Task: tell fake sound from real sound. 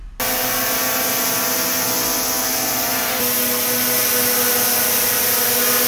real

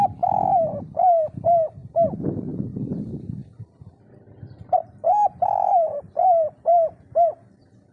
fake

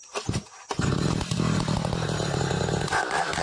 fake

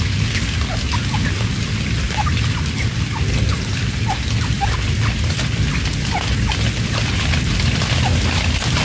real